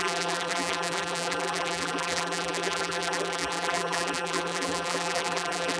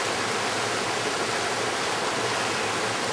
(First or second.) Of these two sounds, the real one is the second